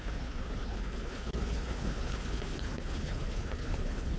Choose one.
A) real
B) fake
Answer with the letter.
B